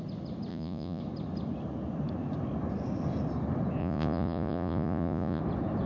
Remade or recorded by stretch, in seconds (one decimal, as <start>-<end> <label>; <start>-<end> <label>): 0.0-0.5 recorded; 0.5-1.0 remade; 1.0-3.8 recorded; 3.8-5.4 remade; 5.4-5.9 recorded